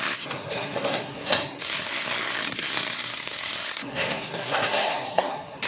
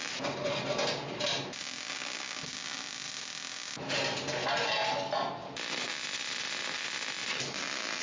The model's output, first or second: first